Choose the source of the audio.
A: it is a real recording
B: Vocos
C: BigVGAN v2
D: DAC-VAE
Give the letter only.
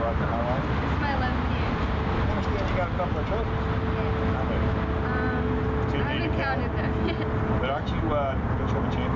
A